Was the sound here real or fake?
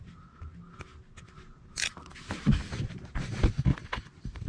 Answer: real